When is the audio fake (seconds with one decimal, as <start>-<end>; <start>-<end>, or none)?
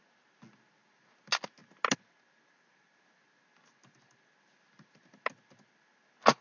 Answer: none